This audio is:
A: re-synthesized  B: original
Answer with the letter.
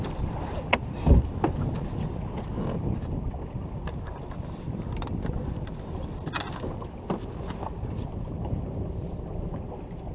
B